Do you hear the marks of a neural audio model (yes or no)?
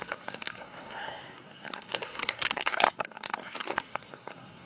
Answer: yes